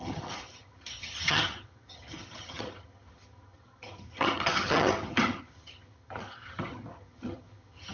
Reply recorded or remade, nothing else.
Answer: remade